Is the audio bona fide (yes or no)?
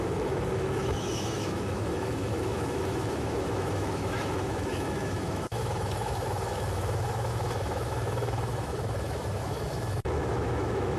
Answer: no